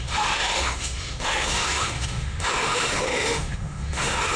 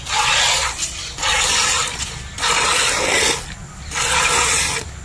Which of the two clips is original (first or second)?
second